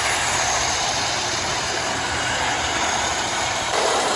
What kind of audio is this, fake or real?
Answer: fake